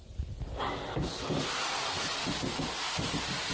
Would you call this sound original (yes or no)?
yes